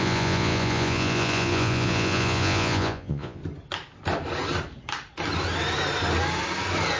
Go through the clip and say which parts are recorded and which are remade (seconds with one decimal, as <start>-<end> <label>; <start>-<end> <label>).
0.0-3.4 remade; 3.4-7.0 recorded